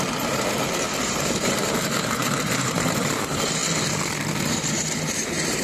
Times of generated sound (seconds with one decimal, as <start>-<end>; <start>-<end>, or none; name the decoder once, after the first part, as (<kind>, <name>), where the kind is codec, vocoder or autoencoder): 0.0-3.6 (vocoder, BigVGAN v2); 4.2-5.6